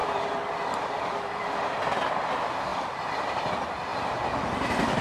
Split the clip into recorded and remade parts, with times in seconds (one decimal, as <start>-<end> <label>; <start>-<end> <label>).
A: 0.0-2.2 remade; 2.2-2.7 recorded; 2.7-3.5 remade; 3.5-5.0 recorded